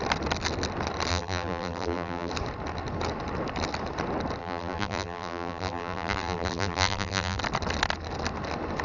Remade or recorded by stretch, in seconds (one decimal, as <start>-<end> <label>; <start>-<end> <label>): 0.0-1.1 recorded; 1.1-2.3 remade; 2.3-4.4 recorded; 4.4-7.4 remade; 7.4-8.8 recorded